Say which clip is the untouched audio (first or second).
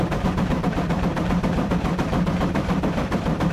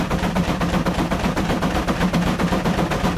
second